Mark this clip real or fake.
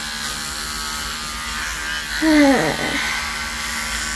real